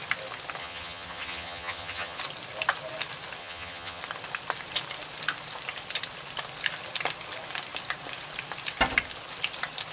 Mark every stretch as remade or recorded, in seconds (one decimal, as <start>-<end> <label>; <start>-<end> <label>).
0.0-0.6 recorded; 0.6-2.2 remade; 2.2-3.4 recorded; 3.4-4.0 remade; 4.0-9.9 recorded